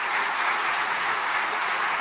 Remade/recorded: remade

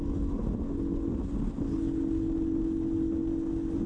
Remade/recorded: recorded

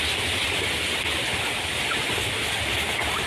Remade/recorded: recorded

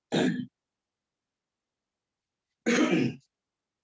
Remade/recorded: recorded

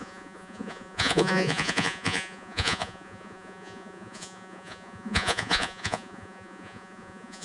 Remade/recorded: remade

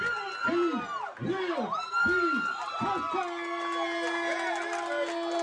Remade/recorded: recorded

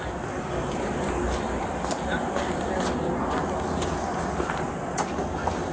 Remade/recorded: recorded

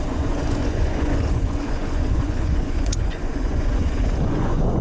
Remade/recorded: remade